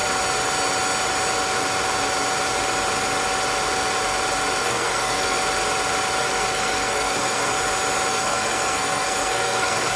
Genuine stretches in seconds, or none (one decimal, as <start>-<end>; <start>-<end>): 0.0-4.6; 5.4-6.2; 7.5-8.1